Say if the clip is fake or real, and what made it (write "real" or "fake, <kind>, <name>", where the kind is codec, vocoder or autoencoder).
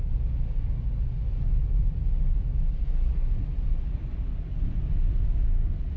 real